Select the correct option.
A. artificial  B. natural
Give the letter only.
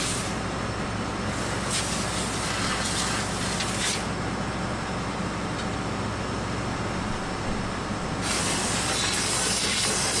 B